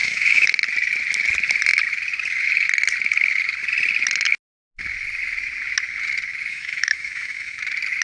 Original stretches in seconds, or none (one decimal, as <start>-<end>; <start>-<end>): 0.5-6.5; 7.6-8.0